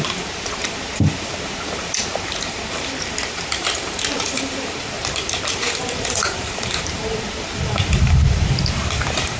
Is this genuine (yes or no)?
no